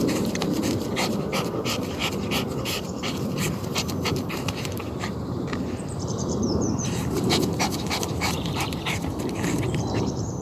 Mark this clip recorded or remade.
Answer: remade